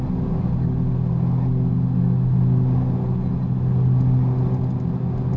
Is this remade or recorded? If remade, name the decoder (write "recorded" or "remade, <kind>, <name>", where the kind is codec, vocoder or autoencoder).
recorded